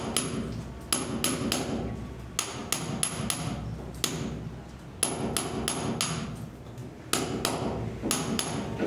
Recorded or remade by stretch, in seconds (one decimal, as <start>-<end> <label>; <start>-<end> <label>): 0.0-8.9 recorded